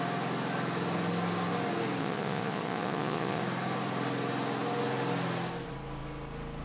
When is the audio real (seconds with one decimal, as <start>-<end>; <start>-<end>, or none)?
0.0-2.0; 3.4-6.6